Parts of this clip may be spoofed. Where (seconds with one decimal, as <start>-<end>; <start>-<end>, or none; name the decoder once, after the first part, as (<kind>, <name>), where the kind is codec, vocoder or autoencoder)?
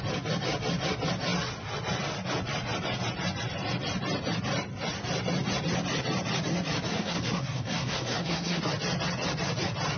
6.9-8.6 (codec, SNAC)